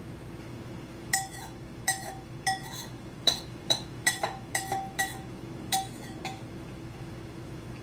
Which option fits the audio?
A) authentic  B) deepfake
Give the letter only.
B